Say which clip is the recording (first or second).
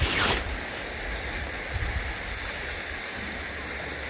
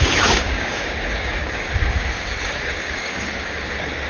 first